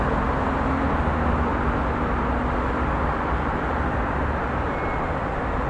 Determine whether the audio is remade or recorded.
recorded